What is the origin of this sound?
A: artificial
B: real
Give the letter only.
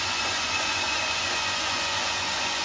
A